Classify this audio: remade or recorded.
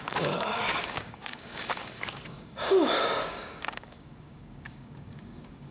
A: remade